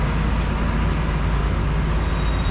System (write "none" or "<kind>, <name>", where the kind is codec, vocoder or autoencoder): none